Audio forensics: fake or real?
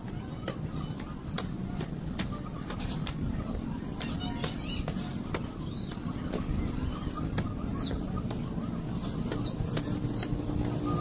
real